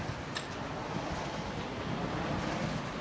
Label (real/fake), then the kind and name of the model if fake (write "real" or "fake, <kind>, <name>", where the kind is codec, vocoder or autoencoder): real